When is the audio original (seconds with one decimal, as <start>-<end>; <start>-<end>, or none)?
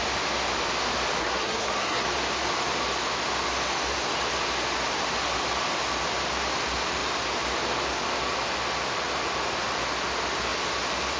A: 0.0-1.2; 2.0-11.2